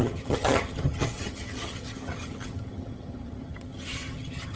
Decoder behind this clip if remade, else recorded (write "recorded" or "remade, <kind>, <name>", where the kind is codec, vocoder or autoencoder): remade, vocoder, HiFi-GAN